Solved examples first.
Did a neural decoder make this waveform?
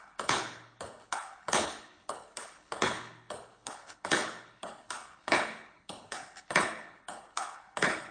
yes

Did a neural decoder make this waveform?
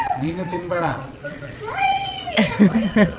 yes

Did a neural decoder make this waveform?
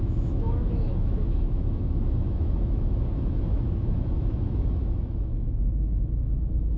yes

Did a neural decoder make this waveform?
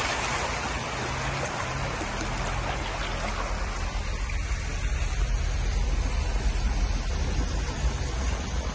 no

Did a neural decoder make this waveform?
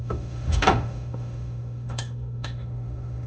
yes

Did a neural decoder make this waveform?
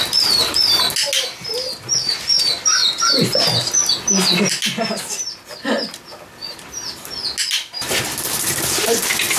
no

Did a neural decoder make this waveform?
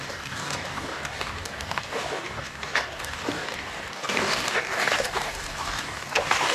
yes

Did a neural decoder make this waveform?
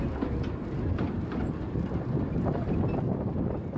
no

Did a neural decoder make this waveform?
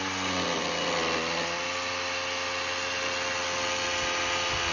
no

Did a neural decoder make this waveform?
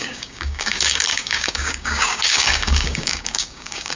yes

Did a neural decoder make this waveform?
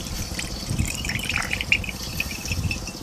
yes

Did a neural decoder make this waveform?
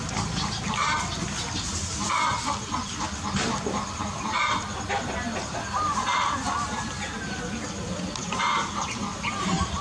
no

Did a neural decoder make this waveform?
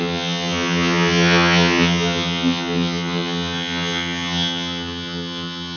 yes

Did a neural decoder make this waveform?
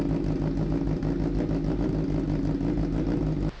no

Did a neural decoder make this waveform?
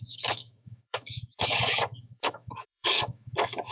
yes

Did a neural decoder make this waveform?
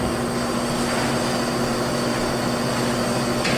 no